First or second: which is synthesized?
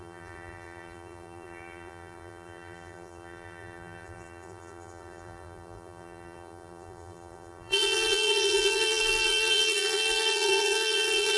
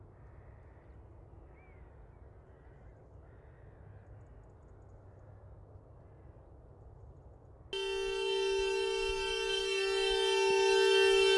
first